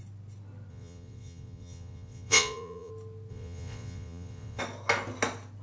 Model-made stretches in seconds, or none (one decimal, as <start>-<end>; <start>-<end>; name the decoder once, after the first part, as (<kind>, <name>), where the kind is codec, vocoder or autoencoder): 0.7-2.9 (vocoder, Vocos); 3.3-4.6